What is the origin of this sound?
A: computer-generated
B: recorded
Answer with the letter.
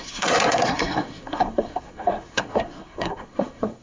A